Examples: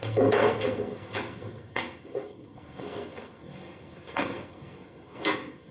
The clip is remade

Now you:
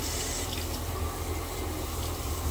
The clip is recorded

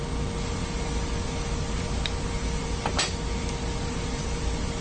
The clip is recorded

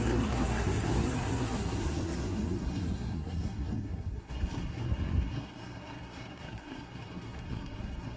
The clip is remade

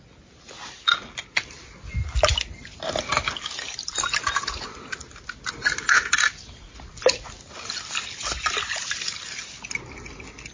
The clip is recorded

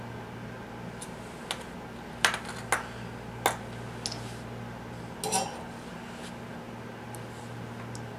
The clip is recorded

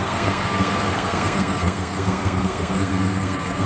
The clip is remade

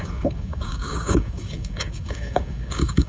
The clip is remade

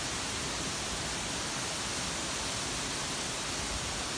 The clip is recorded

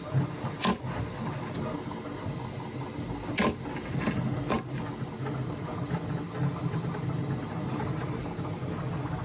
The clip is recorded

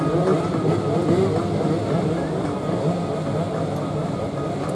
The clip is recorded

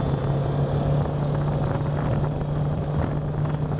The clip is recorded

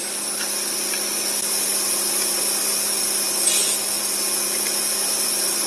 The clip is recorded